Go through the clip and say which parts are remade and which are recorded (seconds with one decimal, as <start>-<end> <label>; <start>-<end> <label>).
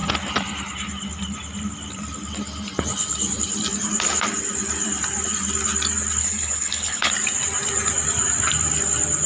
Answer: 0.0-6.2 recorded; 6.2-7.1 remade; 7.1-9.3 recorded